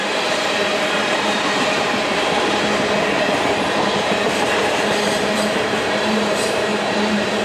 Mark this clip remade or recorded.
remade